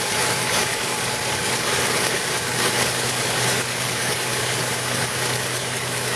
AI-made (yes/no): yes